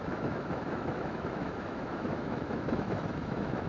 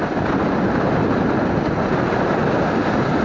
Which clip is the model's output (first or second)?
first